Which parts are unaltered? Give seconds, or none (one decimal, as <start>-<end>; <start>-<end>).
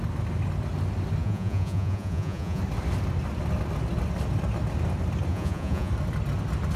0.0-1.2; 2.6-5.3; 5.9-6.8